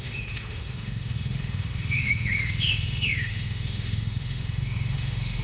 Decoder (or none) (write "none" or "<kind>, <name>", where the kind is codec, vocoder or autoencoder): autoencoder, DAC-VAE